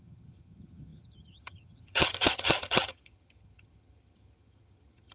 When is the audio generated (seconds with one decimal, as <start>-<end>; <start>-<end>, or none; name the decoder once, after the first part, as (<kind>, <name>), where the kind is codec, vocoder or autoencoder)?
0.0-5.1 (vocoder, HiFi-GAN)